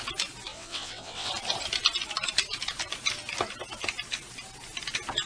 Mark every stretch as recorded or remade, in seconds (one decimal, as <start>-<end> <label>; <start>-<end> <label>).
0.0-0.5 recorded; 0.5-1.3 remade; 1.3-5.3 recorded